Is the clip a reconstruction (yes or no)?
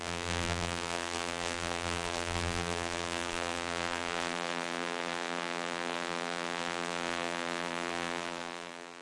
yes